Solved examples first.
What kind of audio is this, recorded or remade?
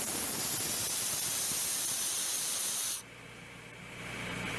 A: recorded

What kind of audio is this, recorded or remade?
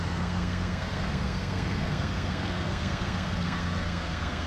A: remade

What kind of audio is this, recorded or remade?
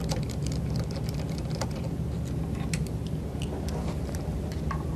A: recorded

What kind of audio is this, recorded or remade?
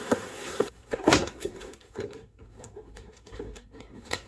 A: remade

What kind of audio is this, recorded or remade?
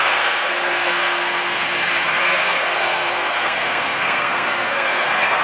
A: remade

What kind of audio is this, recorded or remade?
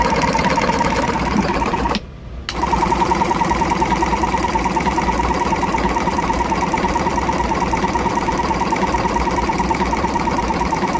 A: recorded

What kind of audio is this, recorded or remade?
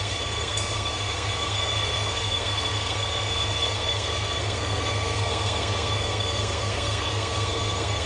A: remade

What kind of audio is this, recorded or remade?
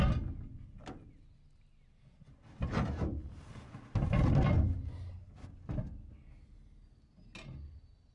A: recorded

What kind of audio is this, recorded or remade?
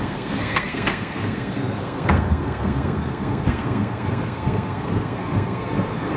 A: remade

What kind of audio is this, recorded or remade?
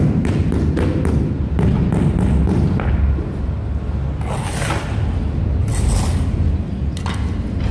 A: recorded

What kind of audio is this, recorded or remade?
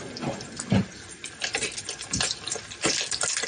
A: recorded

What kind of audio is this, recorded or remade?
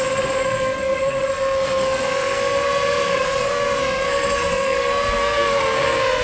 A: remade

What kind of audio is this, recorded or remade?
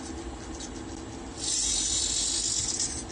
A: recorded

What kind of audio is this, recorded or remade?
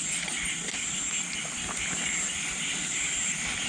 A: recorded